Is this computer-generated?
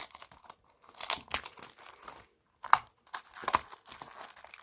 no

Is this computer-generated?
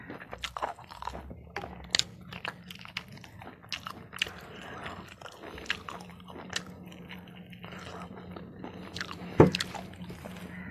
no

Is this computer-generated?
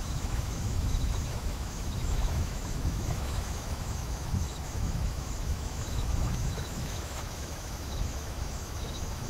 yes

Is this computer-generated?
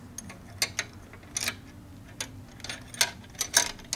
no